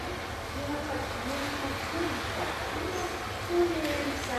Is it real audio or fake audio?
real